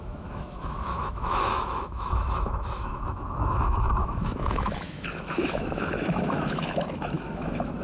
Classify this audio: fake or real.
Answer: fake